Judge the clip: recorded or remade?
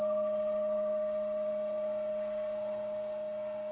remade